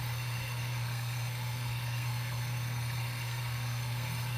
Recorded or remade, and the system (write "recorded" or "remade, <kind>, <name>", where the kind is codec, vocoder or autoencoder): remade, codec, SNAC